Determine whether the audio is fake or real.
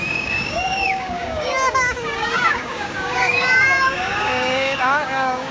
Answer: fake